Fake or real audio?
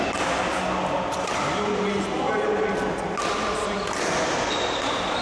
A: real